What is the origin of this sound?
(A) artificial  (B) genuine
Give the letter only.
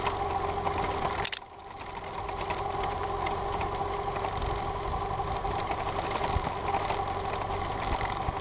B